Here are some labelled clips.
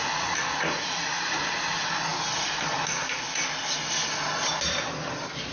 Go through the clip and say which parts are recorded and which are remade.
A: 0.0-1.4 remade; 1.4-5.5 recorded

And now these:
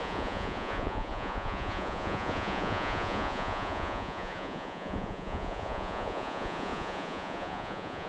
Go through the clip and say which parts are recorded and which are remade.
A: 0.0-8.1 remade

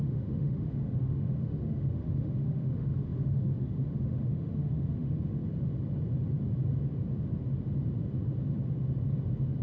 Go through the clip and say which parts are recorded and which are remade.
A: 0.0-5.4 remade; 5.4-9.6 recorded

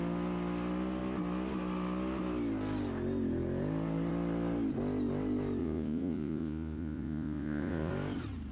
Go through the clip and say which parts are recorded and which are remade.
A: 0.0-5.6 recorded; 5.6-7.9 remade; 7.9-8.5 recorded

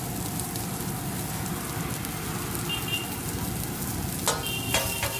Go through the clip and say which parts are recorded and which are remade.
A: 0.0-5.2 recorded

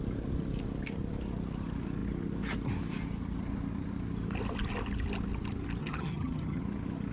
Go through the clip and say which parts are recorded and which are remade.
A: 0.0-5.8 recorded; 5.8-6.6 remade; 6.6-7.1 recorded

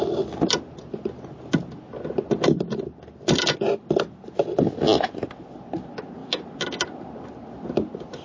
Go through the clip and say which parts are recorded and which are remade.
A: 0.0-8.2 recorded

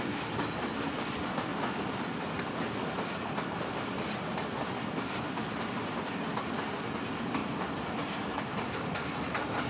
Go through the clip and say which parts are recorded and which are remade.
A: 0.0-9.7 recorded